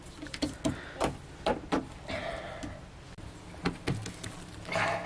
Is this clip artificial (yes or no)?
no